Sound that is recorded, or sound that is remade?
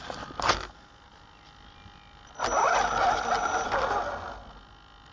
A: recorded